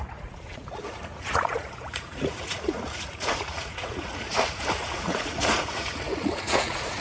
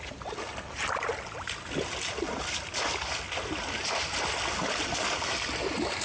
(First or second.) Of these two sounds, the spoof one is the first